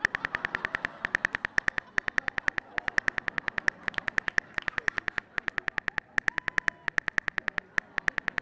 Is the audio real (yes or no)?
yes